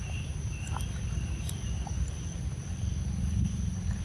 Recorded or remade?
recorded